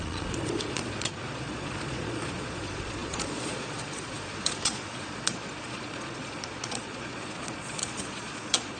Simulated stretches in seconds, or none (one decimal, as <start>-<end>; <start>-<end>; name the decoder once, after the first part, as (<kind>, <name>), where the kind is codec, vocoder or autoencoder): 0.0-8.8 (vocoder, Vocos)